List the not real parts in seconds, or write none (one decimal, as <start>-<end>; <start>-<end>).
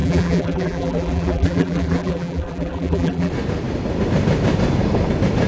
0.0-3.3